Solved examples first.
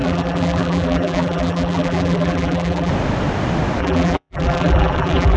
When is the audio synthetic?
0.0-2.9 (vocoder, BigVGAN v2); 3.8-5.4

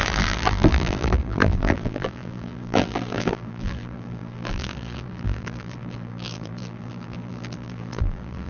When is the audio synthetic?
0.0-8.5 (vocoder, BigVGAN v2)

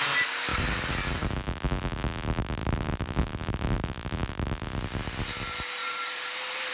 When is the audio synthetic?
2.6-4.3 (vocoder, BigVGAN v2); 5.8-6.7

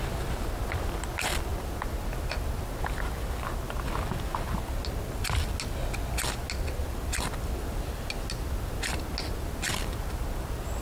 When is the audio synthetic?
none

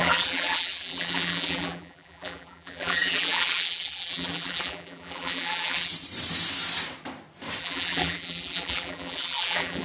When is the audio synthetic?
0.0-5.9 (vocoder, BigVGAN v2); 7.6-9.8

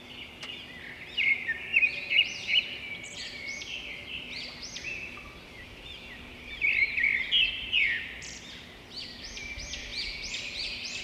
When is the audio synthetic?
0.0-4.8 (vocoder, BigVGAN v2); 5.4-9.9

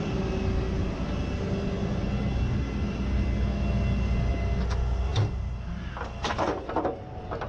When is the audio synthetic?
5.1-5.9 (vocoder, BigVGAN v2)

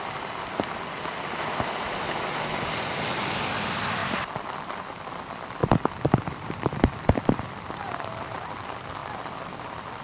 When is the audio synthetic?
5.6-7.9 (vocoder, BigVGAN v2); 9.0-10.0